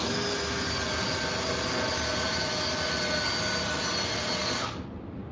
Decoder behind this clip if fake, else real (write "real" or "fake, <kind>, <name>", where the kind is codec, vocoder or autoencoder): real